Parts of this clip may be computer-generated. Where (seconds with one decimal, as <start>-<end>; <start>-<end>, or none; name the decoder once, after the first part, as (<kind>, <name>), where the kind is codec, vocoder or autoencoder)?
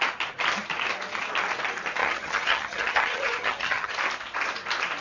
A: 2.0-3.9 (vocoder, HiFi-GAN)